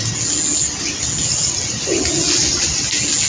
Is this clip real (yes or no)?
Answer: yes